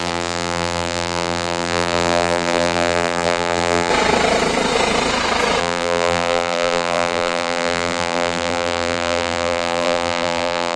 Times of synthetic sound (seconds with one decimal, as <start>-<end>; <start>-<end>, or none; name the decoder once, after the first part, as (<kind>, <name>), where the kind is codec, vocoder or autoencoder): 0.0-3.9 (vocoder, BigVGAN v2); 5.6-10.8